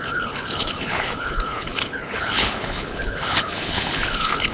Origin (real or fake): fake